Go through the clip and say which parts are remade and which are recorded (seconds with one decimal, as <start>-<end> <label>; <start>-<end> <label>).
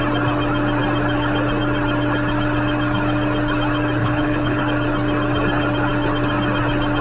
0.0-4.0 recorded; 4.0-4.6 remade; 4.6-7.0 recorded